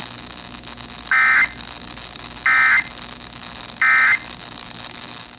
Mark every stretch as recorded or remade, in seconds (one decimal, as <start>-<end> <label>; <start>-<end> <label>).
0.0-5.4 recorded